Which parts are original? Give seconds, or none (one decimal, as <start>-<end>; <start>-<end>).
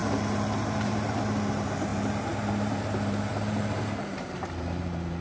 none